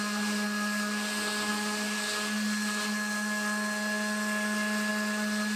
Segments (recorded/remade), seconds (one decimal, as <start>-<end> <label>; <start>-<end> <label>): 0.0-5.6 recorded